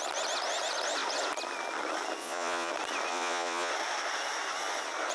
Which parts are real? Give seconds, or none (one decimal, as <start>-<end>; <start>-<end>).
0.0-2.2; 2.7-3.1; 3.7-5.1